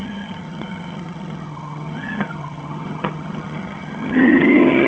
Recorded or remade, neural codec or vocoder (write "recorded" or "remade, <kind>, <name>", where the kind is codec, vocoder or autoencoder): remade, vocoder, HiFi-GAN